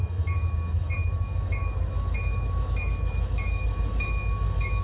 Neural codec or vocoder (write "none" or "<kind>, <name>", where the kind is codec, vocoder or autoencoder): autoencoder, DAC-VAE